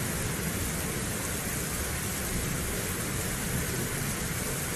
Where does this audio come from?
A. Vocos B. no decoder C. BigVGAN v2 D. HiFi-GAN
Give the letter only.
B